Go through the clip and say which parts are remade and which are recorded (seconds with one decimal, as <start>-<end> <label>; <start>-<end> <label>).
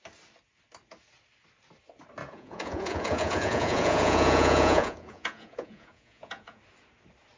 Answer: 0.0-2.2 recorded; 2.2-6.6 remade; 6.6-7.4 recorded